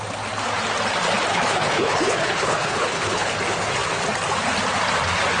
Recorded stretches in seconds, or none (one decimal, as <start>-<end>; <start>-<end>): 0.0-1.3; 3.4-5.4